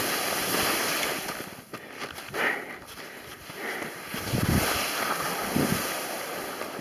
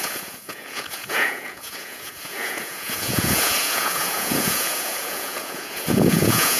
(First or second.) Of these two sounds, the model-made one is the second